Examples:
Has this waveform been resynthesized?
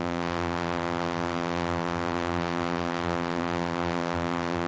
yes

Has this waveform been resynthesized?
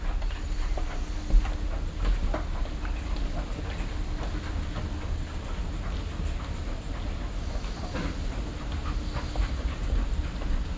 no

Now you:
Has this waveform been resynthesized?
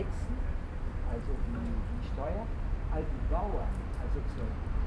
yes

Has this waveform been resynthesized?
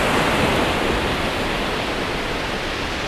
no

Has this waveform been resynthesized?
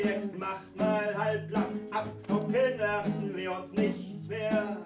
no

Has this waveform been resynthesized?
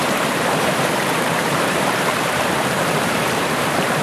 yes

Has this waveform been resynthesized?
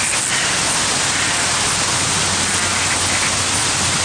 no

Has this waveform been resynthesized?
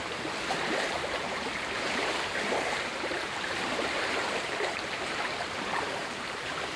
yes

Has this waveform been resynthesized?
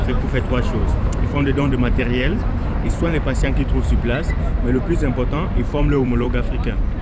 yes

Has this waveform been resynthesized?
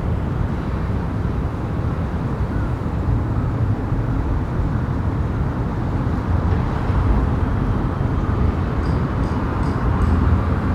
yes